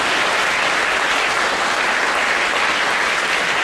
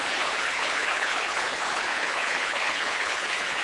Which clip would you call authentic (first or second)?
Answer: first